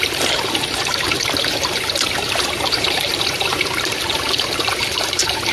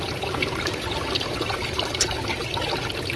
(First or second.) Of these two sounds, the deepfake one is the first